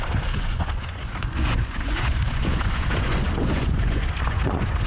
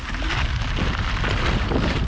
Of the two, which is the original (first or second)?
second